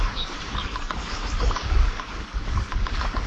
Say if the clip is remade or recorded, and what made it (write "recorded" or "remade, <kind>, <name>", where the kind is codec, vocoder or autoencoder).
remade, codec, DAC